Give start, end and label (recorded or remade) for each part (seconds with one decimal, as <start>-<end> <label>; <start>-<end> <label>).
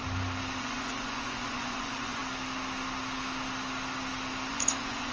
0.0-0.6 recorded; 0.6-2.2 remade; 2.2-4.5 recorded; 4.5-5.1 remade